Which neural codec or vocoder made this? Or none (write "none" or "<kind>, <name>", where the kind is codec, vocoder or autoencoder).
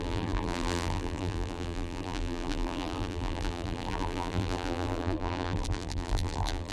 vocoder, BigVGAN v2